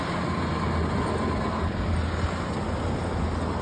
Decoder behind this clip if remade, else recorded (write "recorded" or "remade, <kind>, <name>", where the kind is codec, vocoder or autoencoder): recorded